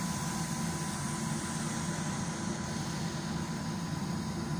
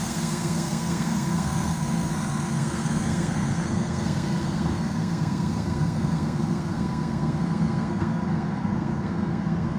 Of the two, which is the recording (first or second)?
first